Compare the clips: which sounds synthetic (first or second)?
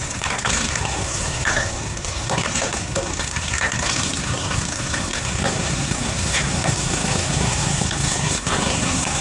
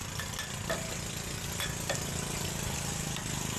first